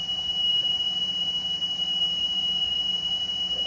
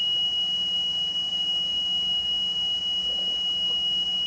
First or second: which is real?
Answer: second